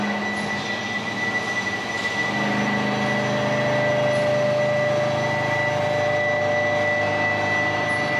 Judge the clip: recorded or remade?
recorded